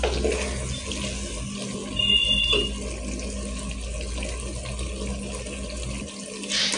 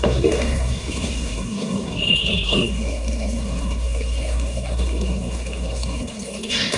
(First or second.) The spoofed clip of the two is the second